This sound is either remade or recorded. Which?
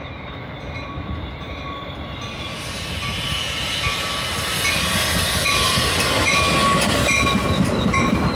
recorded